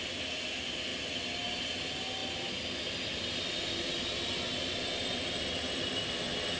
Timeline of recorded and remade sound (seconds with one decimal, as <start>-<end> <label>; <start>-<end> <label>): 0.0-6.6 recorded